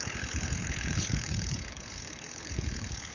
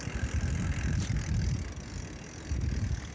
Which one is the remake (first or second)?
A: first